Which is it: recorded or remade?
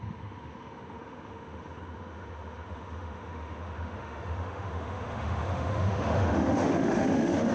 remade